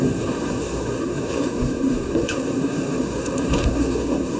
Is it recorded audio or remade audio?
remade